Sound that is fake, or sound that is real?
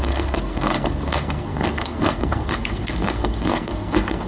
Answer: fake